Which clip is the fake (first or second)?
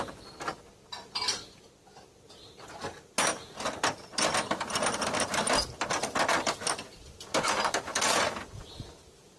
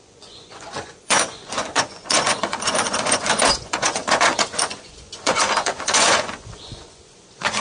second